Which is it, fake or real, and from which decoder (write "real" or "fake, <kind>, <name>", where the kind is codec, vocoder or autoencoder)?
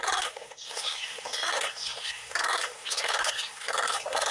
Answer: fake, codec, SNAC